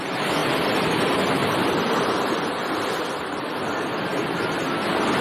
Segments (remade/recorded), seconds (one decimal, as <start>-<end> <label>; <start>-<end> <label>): 0.0-0.4 recorded; 0.4-3.5 remade; 3.5-5.2 recorded